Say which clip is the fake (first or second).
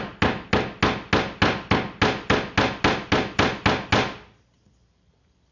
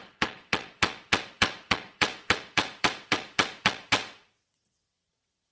second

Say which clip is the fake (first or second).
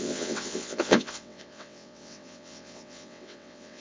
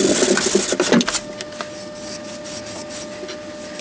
first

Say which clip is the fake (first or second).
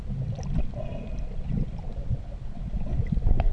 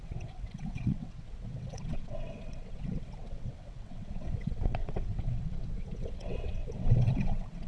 second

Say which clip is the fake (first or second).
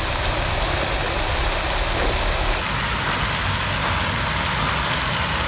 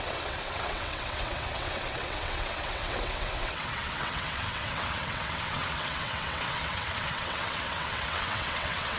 second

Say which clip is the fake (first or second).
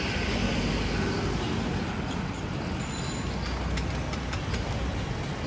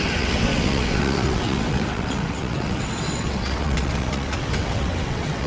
second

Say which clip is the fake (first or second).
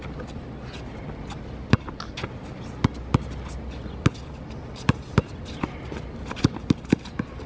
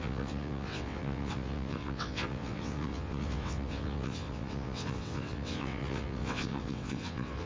second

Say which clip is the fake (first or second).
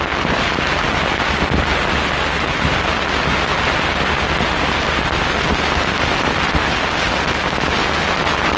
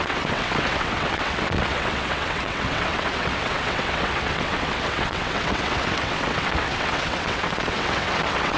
second